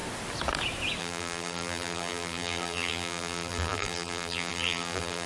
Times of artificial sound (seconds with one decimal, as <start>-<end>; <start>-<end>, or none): 1.0-5.3